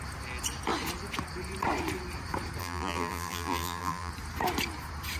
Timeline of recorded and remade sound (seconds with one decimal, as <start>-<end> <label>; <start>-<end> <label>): 0.0-2.6 recorded; 2.6-4.1 remade; 4.1-5.2 recorded